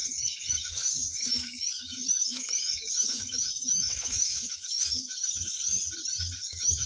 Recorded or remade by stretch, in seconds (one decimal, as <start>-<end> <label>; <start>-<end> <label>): 0.0-5.8 remade; 5.8-6.4 recorded; 6.4-6.9 remade